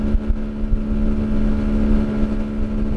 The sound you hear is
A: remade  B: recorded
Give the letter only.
B